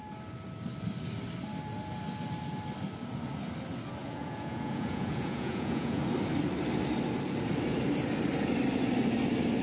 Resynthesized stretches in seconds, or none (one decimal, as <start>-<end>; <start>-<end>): 4.0-6.0